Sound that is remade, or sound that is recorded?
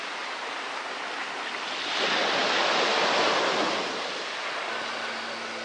recorded